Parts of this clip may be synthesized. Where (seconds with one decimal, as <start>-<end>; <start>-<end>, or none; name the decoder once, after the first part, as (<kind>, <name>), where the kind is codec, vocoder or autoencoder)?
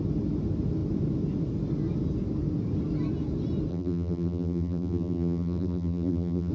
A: 3.7-6.5 (vocoder, BigVGAN v2)